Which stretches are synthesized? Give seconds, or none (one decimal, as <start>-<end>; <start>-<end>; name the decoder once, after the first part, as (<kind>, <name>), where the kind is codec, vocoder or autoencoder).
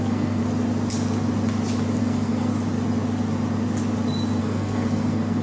0.0-0.4 (codec, SNAC); 2.0-2.5; 4.4-5.4